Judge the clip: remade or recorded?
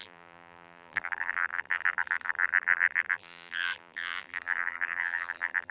remade